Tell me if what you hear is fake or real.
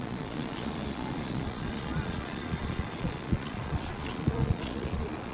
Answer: fake